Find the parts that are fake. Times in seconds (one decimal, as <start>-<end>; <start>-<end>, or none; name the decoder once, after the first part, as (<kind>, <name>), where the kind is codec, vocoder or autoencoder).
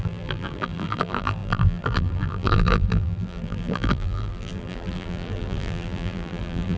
0.0-6.8 (vocoder, BigVGAN v2)